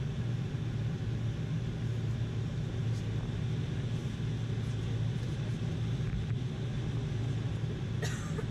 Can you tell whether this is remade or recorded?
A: recorded